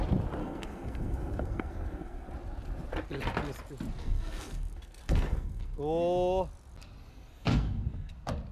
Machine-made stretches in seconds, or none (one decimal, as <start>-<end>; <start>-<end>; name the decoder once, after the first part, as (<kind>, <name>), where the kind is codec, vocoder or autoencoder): 0.4-2.3 (codec, SNAC); 4.0-5.8; 7.1-8.1